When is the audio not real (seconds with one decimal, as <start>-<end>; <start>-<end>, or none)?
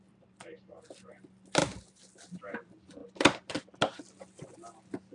none